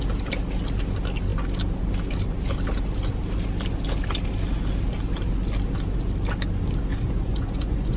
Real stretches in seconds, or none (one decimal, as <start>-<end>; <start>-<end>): 0.0-6.9